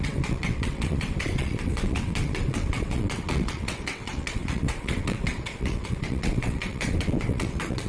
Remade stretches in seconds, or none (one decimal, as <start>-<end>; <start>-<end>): 0.0-7.9